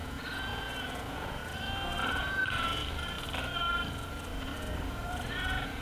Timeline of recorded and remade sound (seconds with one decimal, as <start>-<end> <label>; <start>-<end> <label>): 0.0-1.4 remade; 1.4-2.2 recorded; 2.2-2.8 remade; 2.8-5.1 recorded; 5.1-5.8 remade